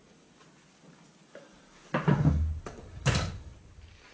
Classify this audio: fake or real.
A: real